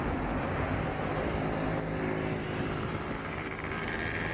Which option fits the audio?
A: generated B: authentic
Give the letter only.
B